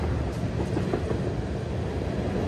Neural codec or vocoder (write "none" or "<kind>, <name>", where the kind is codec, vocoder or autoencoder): none